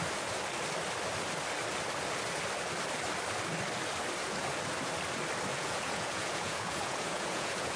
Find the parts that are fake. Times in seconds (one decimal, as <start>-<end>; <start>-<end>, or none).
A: 5.5-7.8